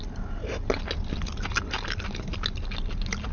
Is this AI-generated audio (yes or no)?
no